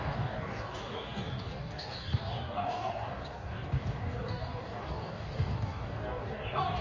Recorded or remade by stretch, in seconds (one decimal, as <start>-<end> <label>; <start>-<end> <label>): 0.0-6.8 remade